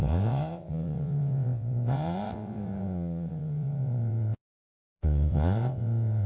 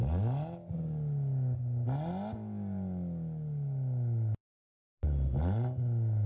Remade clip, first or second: first